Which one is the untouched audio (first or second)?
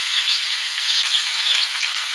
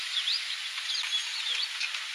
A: second